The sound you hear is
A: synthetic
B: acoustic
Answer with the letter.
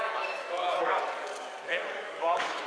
A